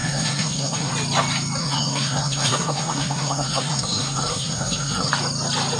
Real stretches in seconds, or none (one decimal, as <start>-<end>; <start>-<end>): 0.9-1.6; 5.1-5.8